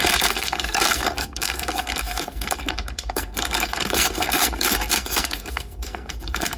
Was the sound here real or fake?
fake